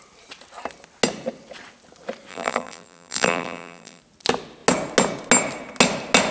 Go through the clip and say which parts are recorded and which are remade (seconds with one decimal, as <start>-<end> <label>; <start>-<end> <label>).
0.0-2.3 recorded; 2.3-4.0 remade; 4.0-6.3 recorded